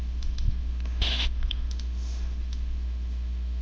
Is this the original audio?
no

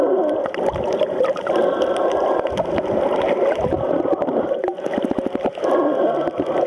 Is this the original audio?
yes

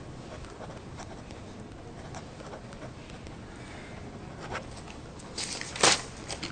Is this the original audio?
yes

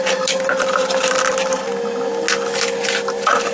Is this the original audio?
yes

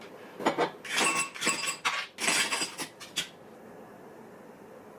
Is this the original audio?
yes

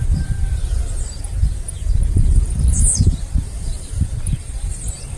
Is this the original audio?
no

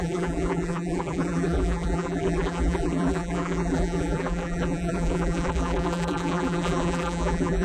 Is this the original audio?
no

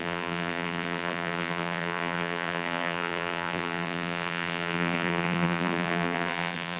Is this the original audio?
no